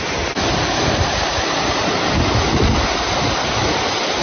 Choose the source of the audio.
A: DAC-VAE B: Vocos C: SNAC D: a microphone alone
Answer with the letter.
D